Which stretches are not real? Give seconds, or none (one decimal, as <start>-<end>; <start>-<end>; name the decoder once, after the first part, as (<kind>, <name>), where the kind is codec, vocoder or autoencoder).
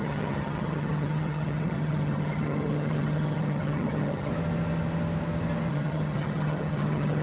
0.0-4.3 (vocoder, HiFi-GAN); 5.7-7.2